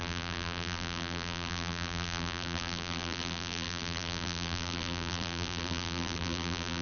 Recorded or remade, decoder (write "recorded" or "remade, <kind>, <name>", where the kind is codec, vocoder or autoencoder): remade, vocoder, BigVGAN v2